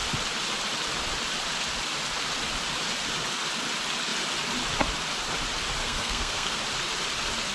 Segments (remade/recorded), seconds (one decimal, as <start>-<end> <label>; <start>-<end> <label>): 0.0-5.8 recorded; 5.8-6.6 remade; 6.6-7.5 recorded

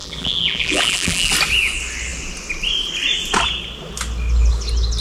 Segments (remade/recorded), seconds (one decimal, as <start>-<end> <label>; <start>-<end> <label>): 0.0-1.3 remade; 1.3-5.0 recorded

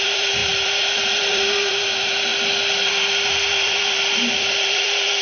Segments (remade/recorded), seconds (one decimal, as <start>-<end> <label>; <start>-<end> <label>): 0.0-2.3 remade; 2.3-2.9 recorded; 2.9-5.2 remade

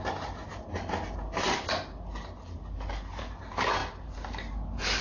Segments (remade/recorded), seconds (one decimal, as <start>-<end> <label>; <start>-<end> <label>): 0.0-5.0 recorded